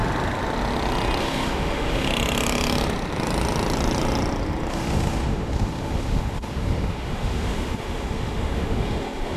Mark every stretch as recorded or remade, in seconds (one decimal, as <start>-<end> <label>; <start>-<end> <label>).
0.0-1.2 recorded; 1.2-2.1 remade; 2.1-4.7 recorded; 4.7-9.4 remade